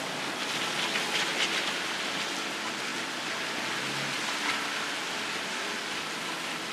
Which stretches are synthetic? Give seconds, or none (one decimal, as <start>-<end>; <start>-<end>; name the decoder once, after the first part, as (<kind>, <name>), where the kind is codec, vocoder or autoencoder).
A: none